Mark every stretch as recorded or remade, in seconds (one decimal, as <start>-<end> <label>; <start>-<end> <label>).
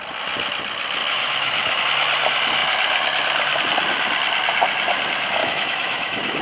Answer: 0.0-1.0 recorded; 1.0-1.8 remade; 1.8-5.4 recorded; 5.4-6.4 remade